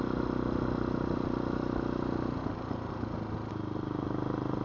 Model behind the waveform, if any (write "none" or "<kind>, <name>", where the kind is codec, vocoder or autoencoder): none